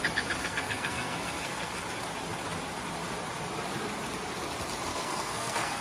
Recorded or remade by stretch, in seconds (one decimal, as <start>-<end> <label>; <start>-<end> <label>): 0.0-0.4 recorded; 0.4-1.7 remade; 1.7-4.9 recorded; 4.9-5.8 remade